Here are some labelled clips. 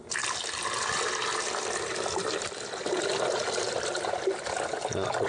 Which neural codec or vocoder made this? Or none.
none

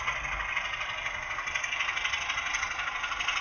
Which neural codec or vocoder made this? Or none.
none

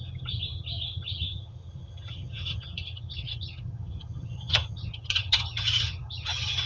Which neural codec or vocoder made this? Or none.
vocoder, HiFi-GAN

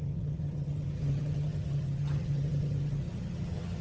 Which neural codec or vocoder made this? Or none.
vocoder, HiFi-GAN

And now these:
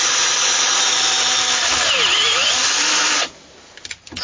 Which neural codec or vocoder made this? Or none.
none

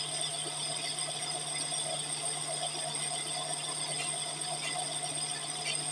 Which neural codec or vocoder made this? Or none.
none